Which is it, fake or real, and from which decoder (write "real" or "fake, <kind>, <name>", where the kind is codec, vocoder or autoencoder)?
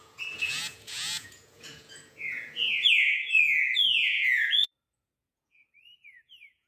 fake, vocoder, Vocos